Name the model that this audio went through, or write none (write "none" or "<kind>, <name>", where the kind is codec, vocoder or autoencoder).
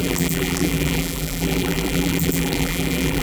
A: vocoder, BigVGAN v2